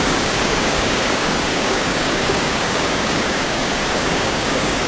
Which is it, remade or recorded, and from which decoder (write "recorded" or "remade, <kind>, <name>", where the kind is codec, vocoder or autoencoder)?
remade, codec, DAC